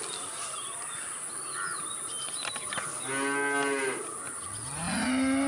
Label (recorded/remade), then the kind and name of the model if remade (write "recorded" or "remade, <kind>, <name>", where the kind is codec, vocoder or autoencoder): recorded